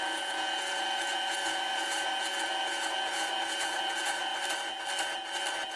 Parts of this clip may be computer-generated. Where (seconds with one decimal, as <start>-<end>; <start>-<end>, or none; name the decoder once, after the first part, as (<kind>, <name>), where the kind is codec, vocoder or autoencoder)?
0.0-4.3 (vocoder, Vocos)